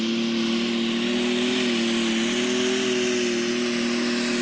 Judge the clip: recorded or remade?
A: recorded